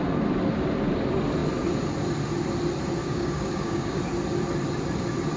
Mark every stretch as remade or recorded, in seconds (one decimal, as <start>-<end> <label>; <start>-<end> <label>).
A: 0.0-3.0 recorded; 3.0-4.0 remade; 4.0-5.4 recorded